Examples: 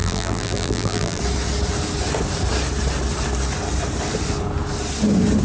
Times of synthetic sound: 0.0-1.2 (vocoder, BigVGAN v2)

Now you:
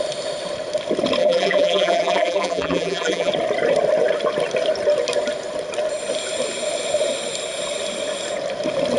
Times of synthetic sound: 1.2-3.3 (vocoder, BigVGAN v2)

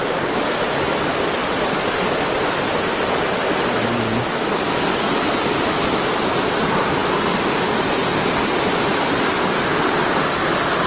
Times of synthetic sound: 1.4-2.8 (vocoder, BigVGAN v2)

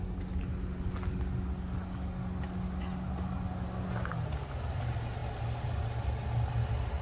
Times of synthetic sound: none

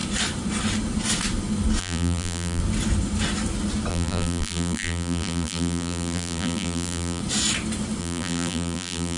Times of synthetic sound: 1.8-2.6 (vocoder, BigVGAN v2); 3.9-7.2; 8.0-9.2

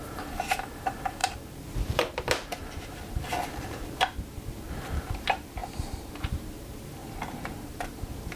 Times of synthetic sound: 0.0-8.4 (vocoder, BigVGAN v2)